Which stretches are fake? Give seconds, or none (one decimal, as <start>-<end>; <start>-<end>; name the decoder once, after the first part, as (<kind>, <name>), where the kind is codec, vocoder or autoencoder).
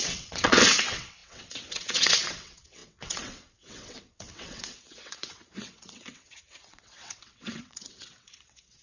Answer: 0.0-8.8 (vocoder, WaveNeXt)